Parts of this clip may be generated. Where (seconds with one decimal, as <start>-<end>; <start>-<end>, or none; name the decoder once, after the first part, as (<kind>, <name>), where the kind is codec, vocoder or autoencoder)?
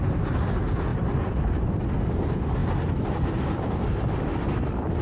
none